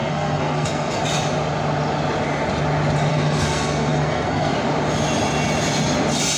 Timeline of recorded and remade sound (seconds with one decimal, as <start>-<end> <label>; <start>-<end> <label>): 0.0-1.0 remade; 1.0-3.1 recorded; 3.1-4.5 remade; 4.5-6.4 recorded